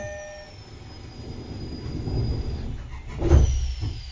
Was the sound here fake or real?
real